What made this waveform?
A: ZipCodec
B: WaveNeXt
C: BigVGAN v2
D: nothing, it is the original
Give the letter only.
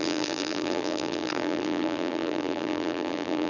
C